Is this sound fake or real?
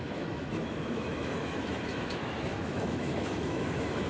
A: fake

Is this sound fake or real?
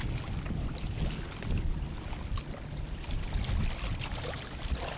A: real